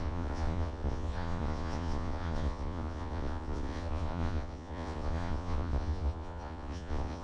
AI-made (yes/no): yes